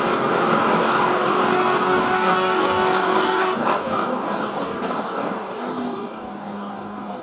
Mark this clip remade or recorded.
remade